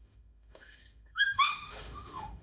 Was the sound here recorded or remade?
remade